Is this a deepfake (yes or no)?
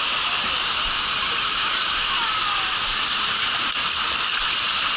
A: no